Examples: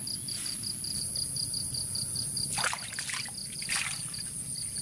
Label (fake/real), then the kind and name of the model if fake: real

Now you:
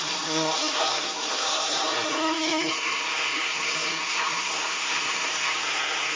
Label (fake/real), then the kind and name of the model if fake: fake, codec, SNAC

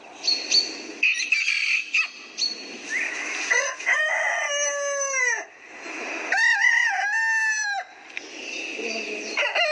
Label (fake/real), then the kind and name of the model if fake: real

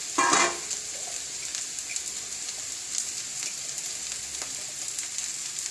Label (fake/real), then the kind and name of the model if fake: real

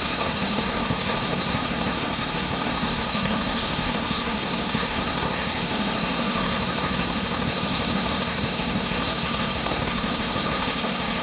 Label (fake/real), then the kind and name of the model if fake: fake, codec, SNAC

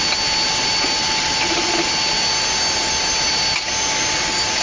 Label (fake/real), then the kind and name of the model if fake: real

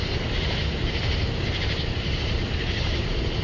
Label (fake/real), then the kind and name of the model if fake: real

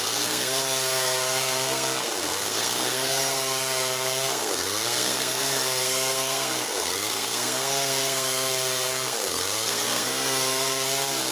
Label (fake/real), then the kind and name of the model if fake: fake, codec, SNAC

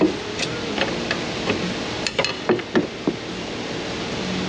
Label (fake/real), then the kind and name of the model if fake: real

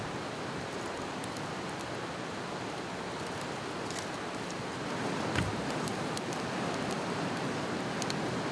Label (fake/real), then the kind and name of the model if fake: real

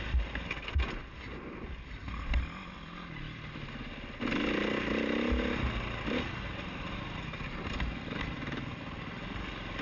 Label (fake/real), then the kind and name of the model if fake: real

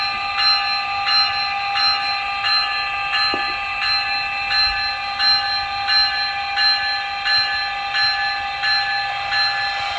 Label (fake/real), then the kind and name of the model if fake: real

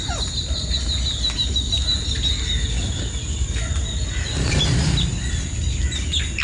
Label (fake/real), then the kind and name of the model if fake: real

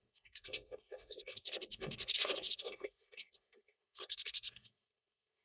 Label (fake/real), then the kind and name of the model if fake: fake, codec, SNAC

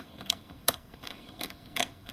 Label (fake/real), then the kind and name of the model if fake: fake, codec, SNAC